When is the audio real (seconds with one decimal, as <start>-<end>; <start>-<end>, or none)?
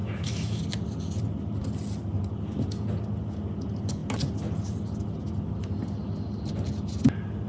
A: 0.6-7.5